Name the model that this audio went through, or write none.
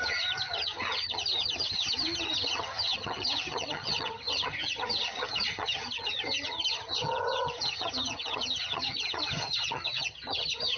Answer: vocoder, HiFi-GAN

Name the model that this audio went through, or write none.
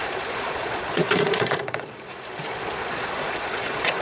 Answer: vocoder, Vocos